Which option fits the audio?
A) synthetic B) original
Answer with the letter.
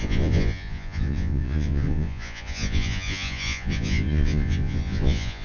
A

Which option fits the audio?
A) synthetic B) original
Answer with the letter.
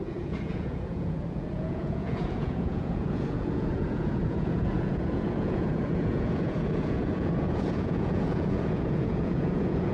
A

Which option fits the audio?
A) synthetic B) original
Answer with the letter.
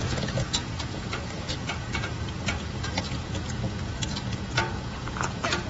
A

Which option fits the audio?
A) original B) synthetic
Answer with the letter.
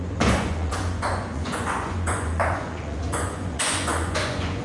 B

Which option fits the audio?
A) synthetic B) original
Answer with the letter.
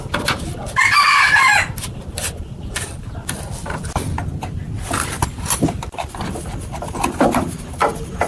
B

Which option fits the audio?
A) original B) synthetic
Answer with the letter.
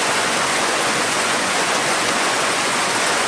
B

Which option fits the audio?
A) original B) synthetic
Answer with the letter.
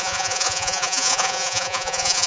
B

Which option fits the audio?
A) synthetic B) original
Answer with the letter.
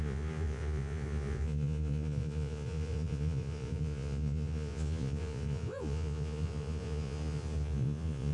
A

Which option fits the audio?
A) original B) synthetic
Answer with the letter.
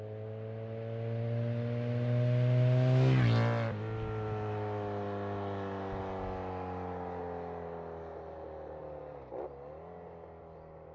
A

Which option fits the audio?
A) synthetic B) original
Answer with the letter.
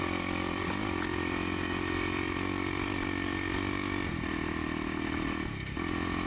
B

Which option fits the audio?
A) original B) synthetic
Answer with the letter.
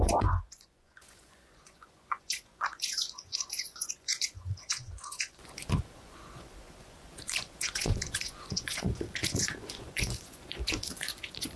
B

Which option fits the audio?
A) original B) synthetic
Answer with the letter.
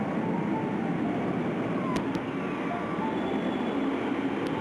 A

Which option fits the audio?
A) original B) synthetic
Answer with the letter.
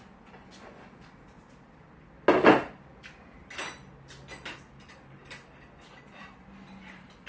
A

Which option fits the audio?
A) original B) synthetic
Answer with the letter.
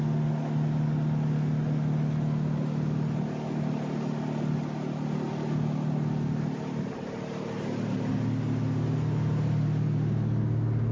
A